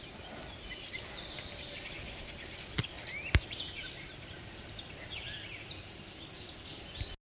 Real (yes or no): yes